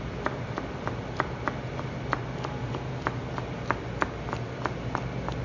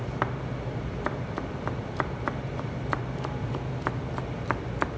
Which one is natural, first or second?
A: first